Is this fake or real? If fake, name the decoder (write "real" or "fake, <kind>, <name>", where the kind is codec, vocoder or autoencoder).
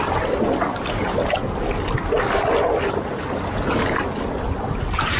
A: real